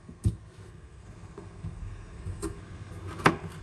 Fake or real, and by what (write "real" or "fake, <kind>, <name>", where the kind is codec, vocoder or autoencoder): fake, codec, SNAC